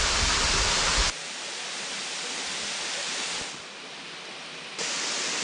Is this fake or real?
real